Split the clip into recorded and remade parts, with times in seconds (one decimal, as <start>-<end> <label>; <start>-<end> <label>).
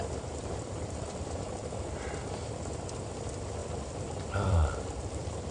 0.0-3.6 remade; 3.6-4.2 recorded; 4.2-5.5 remade